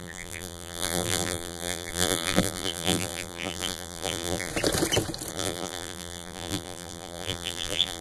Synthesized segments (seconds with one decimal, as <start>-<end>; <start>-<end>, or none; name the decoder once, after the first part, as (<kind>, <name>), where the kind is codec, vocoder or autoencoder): 0.0-4.5 (vocoder, BigVGAN v2); 5.3-8.0